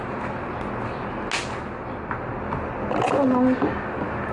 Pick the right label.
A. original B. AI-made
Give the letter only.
A